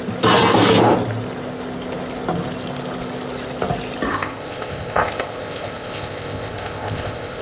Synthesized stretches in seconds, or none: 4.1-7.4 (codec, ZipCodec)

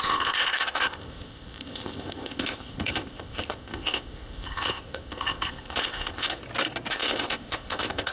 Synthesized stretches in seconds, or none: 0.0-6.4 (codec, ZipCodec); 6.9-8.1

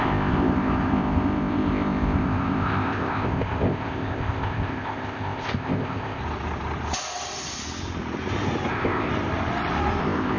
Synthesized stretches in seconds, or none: 0.0-6.2 (codec, ZipCodec); 8.7-9.1; 10.0-10.4